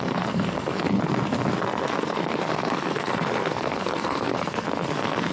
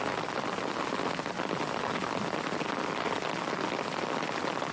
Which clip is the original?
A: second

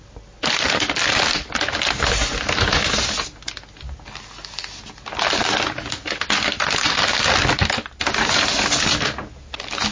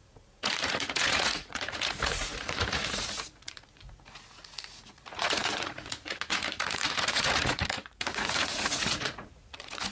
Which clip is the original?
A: first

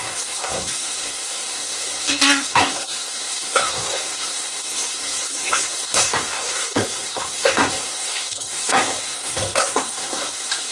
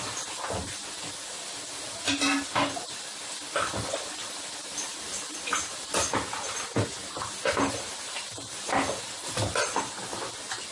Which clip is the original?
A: second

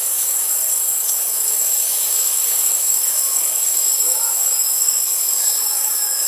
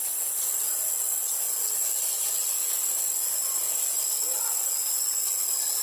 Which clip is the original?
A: second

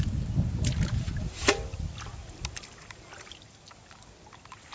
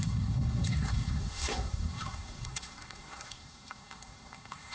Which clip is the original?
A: first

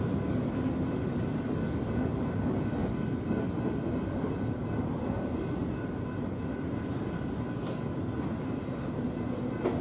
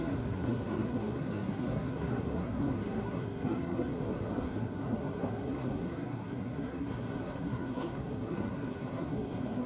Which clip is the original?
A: first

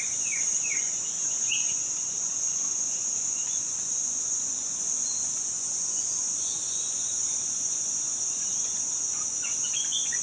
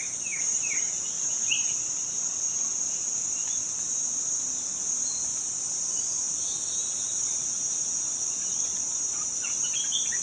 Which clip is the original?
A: second